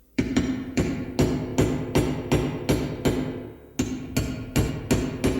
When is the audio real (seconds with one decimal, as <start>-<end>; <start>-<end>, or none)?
1.1-5.4